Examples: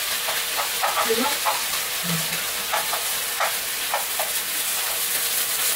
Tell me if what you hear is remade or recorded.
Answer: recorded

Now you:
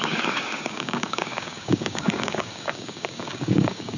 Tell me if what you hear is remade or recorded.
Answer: remade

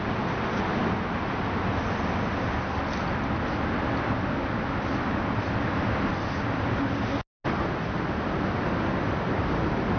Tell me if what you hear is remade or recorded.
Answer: recorded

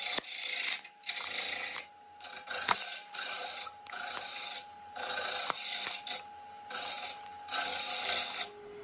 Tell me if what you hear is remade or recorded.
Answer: recorded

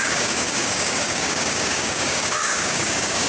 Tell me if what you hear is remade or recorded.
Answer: remade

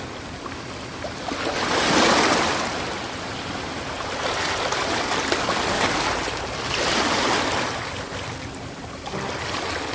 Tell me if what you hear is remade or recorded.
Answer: recorded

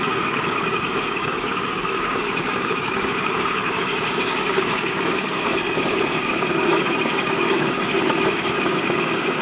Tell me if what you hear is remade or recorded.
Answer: remade